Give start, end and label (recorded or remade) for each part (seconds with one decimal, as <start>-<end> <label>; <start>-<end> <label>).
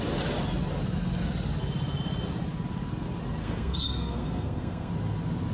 0.0-3.4 recorded; 3.4-4.9 remade; 4.9-5.5 recorded